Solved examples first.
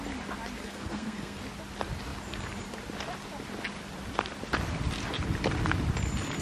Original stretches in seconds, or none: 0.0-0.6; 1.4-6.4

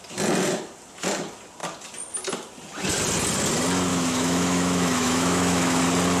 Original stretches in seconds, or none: 0.0-3.9; 5.8-6.2